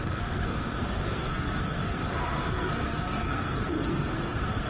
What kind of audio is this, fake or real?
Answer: fake